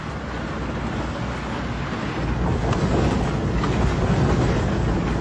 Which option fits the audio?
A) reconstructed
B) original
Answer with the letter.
B